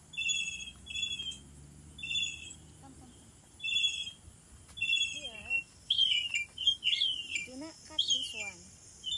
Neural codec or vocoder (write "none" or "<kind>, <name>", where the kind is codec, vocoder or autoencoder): none